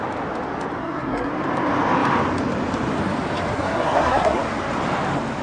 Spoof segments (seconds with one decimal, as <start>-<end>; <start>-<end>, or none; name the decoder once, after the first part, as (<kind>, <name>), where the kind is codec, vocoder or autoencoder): 0.8-1.3 (codec, SNAC); 3.5-4.4